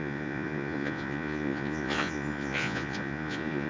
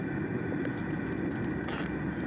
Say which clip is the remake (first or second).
first